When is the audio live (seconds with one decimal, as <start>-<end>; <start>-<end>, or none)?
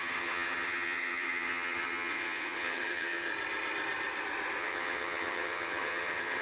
3.3-4.6